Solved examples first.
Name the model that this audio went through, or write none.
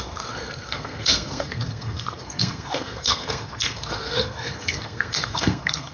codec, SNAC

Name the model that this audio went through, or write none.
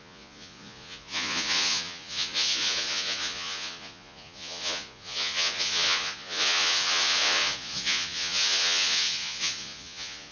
vocoder, Vocos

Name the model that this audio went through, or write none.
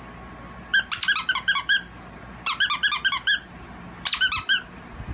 none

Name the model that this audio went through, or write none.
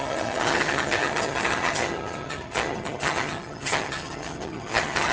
vocoder, HiFi-GAN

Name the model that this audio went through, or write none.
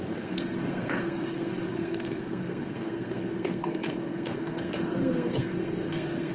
codec, SNAC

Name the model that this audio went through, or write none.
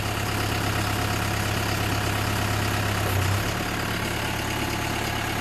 none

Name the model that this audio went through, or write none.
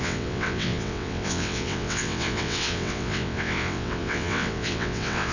vocoder, WaveNeXt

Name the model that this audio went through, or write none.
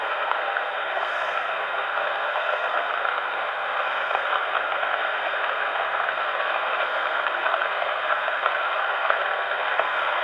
codec, SNAC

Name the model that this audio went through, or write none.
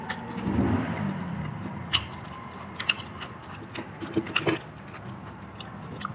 none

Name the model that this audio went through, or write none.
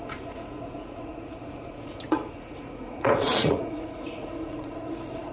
vocoder, Vocos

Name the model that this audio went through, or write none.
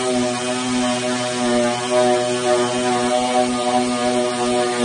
none